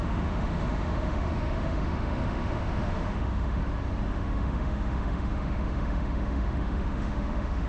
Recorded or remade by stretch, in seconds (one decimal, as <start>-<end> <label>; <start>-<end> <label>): 0.0-3.6 remade; 3.6-4.1 recorded; 4.1-7.7 remade